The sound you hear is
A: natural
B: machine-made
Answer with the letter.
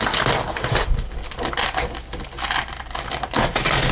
A